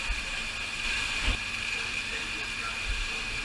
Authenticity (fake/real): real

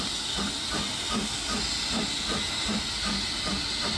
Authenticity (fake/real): real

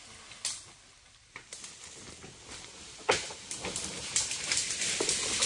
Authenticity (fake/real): real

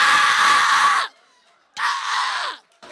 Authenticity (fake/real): real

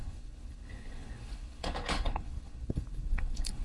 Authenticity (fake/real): fake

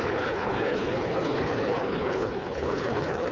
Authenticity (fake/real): fake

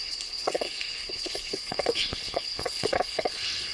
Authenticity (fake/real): fake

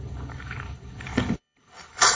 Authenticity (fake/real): fake